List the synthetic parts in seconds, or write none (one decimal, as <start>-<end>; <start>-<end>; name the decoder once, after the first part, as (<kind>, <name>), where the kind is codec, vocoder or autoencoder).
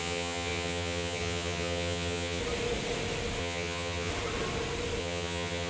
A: 0.0-2.4 (vocoder, HiFi-GAN); 3.4-4.1; 5.0-5.7